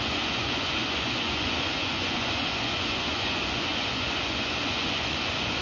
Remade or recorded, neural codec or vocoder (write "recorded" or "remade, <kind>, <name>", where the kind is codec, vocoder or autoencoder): remade, vocoder, Vocos